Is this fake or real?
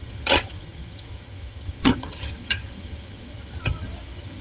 fake